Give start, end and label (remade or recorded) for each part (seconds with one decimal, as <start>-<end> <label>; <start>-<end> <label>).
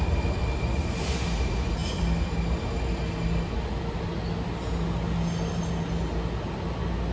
0.0-7.1 recorded